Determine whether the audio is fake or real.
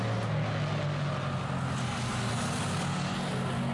real